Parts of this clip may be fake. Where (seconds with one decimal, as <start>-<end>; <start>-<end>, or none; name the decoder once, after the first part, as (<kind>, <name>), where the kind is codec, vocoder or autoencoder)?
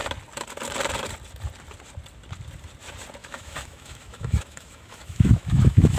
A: 3.2-6.0 (autoencoder, DAC-VAE)